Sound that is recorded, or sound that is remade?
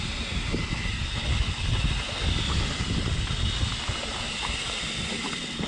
recorded